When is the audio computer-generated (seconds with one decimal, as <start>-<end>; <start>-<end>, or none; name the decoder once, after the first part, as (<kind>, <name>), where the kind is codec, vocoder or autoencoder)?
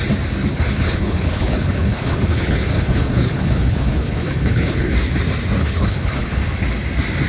0.5-4.9 (codec, HILCodec); 5.6-6.4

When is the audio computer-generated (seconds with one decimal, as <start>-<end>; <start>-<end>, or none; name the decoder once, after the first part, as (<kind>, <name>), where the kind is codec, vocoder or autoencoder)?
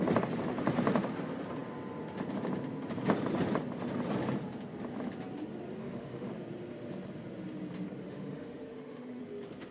5.8-6.3 (autoencoder, DAC-VAE); 8.0-9.2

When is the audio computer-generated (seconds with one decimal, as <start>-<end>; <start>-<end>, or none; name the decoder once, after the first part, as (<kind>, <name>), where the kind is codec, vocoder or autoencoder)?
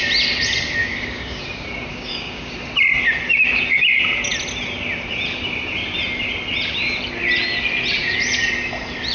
0.8-1.4 (codec, DAC); 1.9-2.5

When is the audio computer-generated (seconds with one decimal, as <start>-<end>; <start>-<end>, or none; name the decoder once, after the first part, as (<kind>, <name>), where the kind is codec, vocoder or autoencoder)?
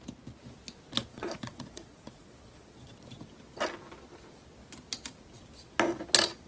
1.1-2.9 (vocoder, Vocos)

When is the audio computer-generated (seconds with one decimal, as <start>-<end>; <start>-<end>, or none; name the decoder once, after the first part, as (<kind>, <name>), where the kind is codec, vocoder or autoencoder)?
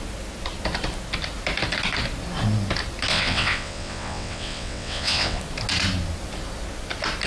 3.1-5.4 (vocoder, WaveNeXt)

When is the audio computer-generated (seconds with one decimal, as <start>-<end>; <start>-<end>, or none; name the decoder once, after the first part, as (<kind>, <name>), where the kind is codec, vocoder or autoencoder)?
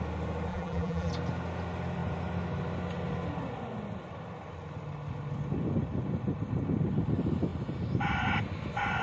0.5-1.1 (vocoder, BigVGAN v2)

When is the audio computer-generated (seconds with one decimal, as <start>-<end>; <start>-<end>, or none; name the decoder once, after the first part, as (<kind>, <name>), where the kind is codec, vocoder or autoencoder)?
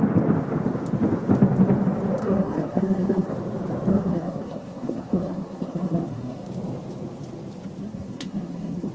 2.2-3.3 (codec, SNAC); 3.9-6.5; 7.8-8.9